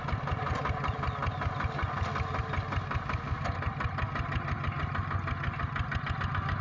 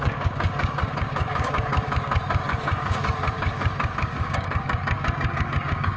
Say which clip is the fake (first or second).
second